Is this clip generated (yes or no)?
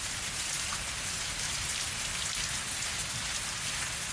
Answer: no